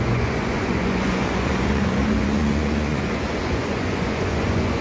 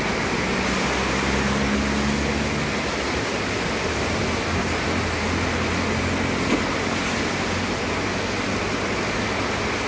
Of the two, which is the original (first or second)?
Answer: second